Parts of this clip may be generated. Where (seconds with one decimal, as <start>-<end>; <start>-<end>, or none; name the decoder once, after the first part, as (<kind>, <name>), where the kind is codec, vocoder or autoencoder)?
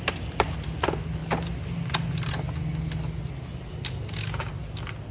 none